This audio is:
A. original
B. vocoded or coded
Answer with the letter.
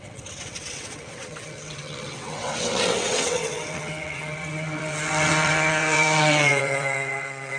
B